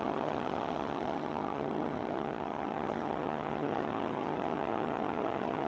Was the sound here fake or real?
fake